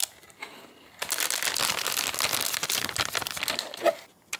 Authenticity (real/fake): real